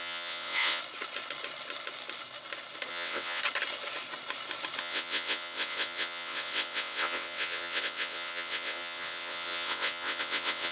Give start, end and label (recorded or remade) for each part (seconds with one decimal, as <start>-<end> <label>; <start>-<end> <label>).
0.0-0.8 remade; 0.8-2.9 recorded; 2.9-3.4 remade; 3.4-4.8 recorded; 4.8-10.7 remade